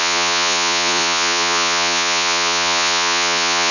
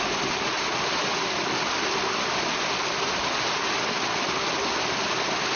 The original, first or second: second